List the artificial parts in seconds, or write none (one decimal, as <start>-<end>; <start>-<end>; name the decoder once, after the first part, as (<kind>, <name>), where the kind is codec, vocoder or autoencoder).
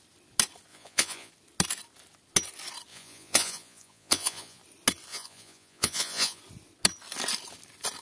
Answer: 0.7-1.3 (vocoder, Vocos); 2.9-4.6; 5.1-6.4